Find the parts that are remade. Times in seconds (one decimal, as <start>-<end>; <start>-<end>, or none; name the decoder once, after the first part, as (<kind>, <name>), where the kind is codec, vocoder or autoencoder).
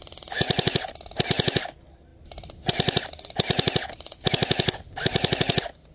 none